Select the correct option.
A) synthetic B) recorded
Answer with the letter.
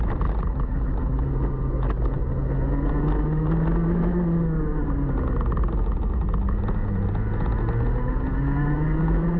B